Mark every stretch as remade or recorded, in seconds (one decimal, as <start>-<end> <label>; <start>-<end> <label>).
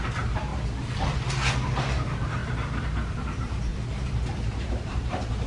0.0-0.5 remade; 0.5-1.8 recorded; 1.8-2.4 remade; 2.4-3.1 recorded; 3.1-3.7 remade; 3.7-4.3 recorded; 4.3-5.5 remade